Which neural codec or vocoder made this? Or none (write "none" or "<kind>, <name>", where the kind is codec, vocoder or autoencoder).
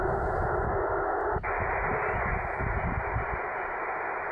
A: none